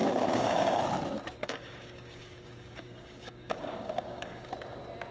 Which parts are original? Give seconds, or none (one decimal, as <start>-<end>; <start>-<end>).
0.8-1.4; 4.5-5.1